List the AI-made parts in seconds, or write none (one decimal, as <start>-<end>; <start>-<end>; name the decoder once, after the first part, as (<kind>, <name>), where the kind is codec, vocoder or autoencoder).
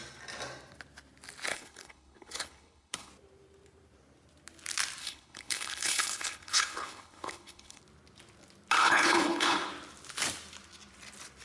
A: 1.5-3.1 (codec, HILCodec); 5.0-7.8; 8.8-9.7